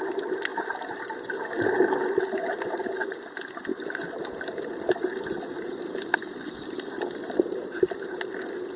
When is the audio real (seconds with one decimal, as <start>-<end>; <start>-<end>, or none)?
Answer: 0.0-8.8